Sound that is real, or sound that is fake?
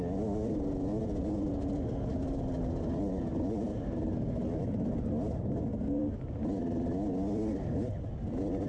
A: real